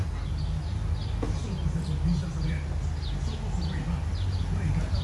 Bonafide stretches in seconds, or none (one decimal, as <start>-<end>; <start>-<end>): 0.0-5.0